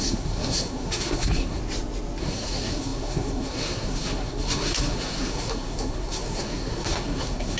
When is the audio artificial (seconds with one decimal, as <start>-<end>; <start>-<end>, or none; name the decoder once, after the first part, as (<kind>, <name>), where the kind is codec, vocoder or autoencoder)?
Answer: 0.0-1.6 (codec, SNAC); 2.2-7.6